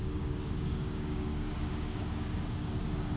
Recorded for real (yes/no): no